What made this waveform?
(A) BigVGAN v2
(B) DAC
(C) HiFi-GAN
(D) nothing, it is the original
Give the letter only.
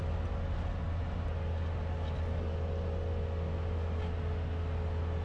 D